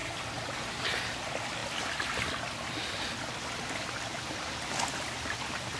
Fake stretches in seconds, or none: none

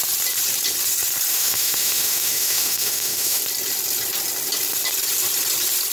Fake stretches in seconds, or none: 1.3-3.4 (autoencoder, DAC-VAE)

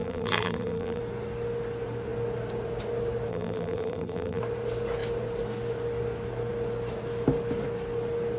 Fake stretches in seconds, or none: 0.0-1.0 (vocoder, BigVGAN v2); 3.3-4.4

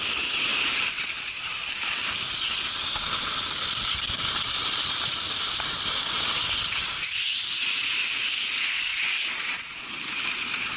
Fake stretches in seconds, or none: 9.1-10.0 (vocoder, Vocos)

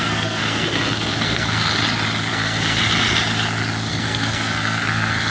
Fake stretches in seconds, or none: 0.0-1.7 (codec, SNAC); 2.3-2.8; 3.9-5.3

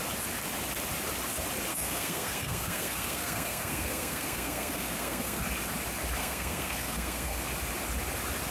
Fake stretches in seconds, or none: 1.7-5.4 (codec, SNAC); 6.2-7.4

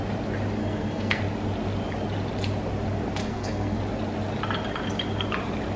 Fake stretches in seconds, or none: 0.6-1.2 (codec, SNAC); 3.2-3.8

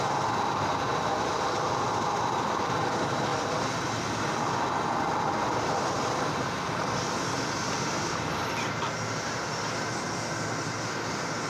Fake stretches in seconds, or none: none